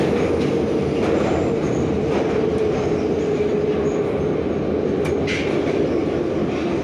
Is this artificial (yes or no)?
no